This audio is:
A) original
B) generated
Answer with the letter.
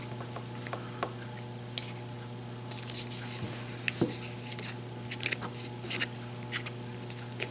A